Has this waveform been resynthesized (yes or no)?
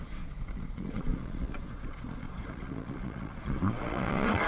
yes